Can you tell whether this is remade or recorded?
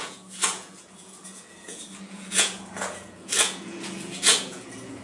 remade